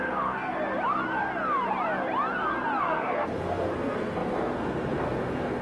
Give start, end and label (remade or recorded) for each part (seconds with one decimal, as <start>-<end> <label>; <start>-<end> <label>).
0.0-0.6 remade; 0.6-2.8 recorded; 2.8-5.6 remade